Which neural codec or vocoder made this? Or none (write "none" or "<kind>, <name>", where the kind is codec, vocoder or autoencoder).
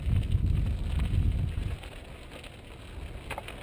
none